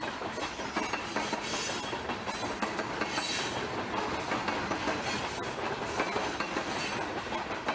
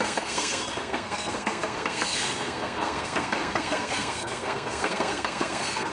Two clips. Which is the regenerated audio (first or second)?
second